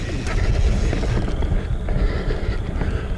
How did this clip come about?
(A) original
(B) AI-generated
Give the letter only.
A